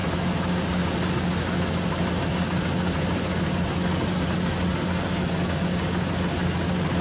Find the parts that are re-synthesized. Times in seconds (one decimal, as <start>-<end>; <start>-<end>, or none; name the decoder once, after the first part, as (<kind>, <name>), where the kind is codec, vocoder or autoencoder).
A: none